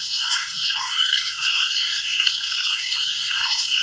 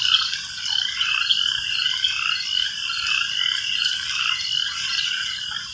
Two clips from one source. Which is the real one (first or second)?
second